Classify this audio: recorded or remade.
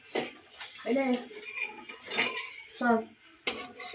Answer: recorded